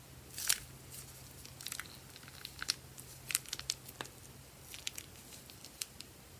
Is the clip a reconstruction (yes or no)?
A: no